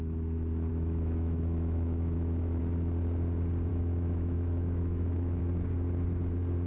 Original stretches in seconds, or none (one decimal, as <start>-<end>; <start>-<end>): 0.0-0.7; 2.6-3.7; 5.4-6.7